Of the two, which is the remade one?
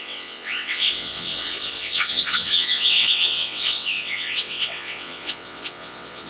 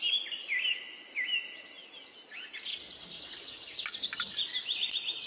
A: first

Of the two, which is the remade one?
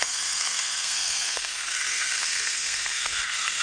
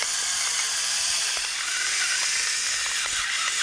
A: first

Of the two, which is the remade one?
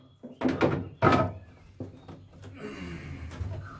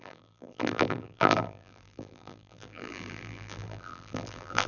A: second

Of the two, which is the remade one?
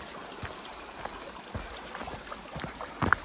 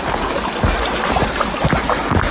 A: first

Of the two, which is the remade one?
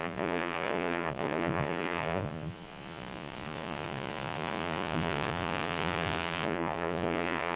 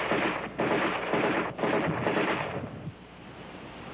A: first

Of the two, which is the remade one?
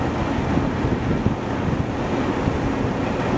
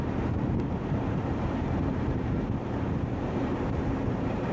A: second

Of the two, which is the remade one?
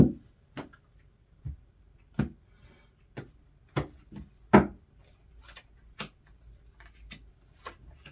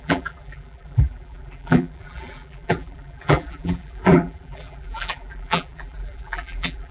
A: second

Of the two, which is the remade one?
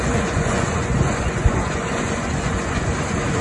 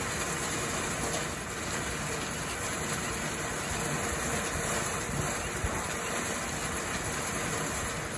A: first